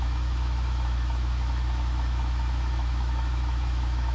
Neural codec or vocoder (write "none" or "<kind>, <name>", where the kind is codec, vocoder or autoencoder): autoencoder, DAC-VAE